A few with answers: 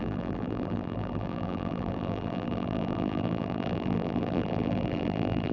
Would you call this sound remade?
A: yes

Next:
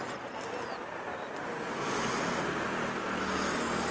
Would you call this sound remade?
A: no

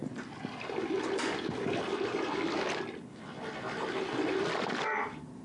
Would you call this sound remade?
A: no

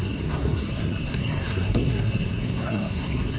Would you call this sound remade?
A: yes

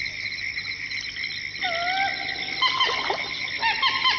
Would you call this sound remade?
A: no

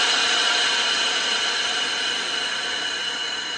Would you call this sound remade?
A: no